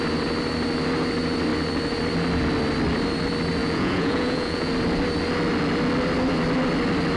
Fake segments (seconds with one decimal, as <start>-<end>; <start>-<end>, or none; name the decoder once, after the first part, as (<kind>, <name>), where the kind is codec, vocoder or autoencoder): 3.6-4.7 (vocoder, Vocos)